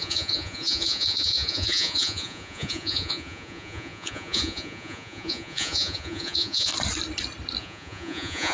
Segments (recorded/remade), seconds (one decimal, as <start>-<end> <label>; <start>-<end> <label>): 0.0-6.7 remade; 6.7-7.6 recorded; 7.6-8.5 remade